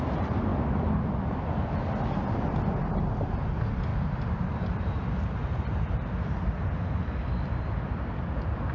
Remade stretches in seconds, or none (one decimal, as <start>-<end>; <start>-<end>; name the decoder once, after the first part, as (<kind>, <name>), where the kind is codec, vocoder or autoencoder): none

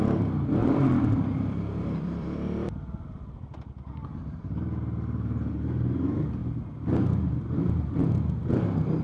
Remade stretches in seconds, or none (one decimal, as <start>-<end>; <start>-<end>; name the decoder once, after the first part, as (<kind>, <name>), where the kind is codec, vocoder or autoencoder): 0.6-5.5 (vocoder, BigVGAN v2); 6.4-8.1

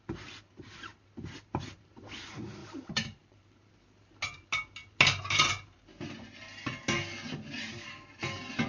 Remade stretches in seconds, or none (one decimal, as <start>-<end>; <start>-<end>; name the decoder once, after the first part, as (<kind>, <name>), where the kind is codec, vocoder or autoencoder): 2.6-3.7 (vocoder, BigVGAN v2)

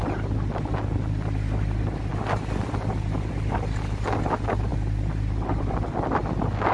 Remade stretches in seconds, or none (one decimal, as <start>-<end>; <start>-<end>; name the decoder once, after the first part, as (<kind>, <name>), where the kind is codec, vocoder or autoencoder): none

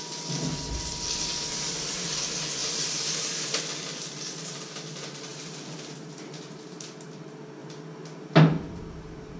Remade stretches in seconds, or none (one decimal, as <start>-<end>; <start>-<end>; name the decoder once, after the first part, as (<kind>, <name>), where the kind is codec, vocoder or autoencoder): 2.6-3.6 (vocoder, BigVGAN v2)

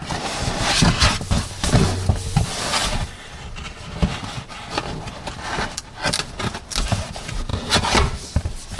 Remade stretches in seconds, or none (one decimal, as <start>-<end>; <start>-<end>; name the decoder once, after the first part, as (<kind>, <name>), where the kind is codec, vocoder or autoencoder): none

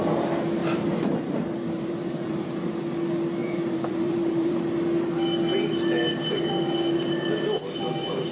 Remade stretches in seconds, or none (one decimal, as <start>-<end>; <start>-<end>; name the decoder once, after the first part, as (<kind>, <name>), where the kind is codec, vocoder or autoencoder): 0.6-2.6 (vocoder, BigVGAN v2); 3.4-4.6

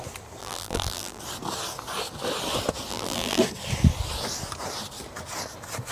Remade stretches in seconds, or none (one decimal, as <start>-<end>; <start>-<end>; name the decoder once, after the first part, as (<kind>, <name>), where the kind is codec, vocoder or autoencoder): 0.4-1.2 (vocoder, BigVGAN v2); 2.9-3.4